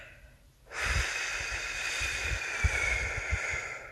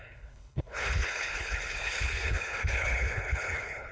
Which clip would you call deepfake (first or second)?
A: second